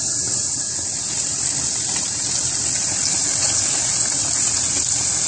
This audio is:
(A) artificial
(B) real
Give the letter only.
B